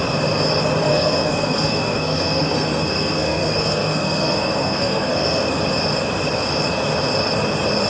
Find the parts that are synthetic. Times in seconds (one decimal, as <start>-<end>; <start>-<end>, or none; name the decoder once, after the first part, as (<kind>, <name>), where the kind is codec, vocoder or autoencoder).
0.9-5.6 (codec, SNAC)